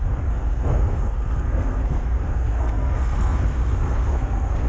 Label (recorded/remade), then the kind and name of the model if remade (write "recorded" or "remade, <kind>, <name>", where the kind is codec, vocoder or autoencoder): remade, codec, SNAC